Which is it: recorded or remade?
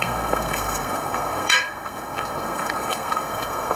remade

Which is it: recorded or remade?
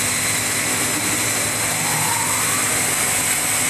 recorded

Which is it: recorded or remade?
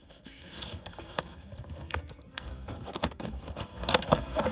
remade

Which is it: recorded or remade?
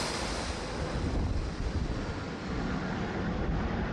recorded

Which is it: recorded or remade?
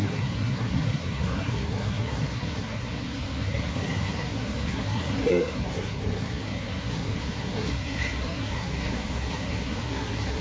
remade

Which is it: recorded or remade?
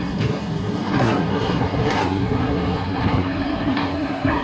remade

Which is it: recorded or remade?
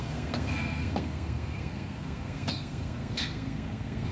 remade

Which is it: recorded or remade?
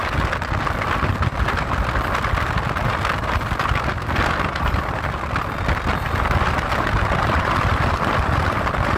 recorded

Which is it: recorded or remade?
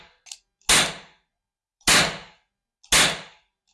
recorded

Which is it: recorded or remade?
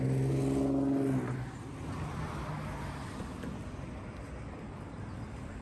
recorded